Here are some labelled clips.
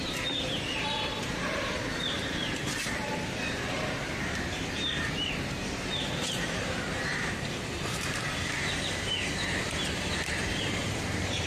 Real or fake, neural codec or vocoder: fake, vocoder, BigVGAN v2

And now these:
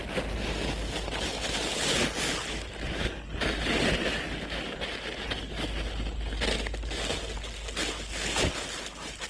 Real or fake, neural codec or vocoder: real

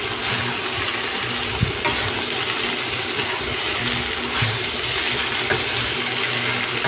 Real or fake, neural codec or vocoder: real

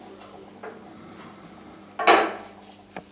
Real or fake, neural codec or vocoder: real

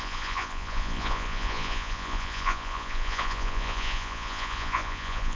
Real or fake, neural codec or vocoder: fake, vocoder, Vocos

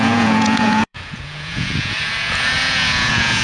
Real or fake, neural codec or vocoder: fake, vocoder, Vocos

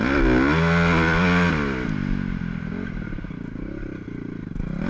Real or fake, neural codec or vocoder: real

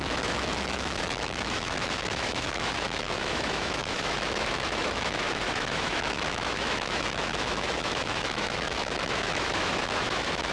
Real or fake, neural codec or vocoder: fake, autoencoder, DAC-VAE